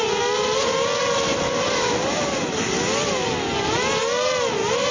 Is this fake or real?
real